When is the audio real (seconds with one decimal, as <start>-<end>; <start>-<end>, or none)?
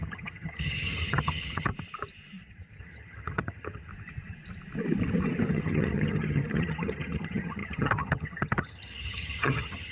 1.7-2.8; 3.9-5.5